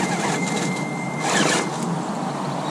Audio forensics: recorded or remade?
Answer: recorded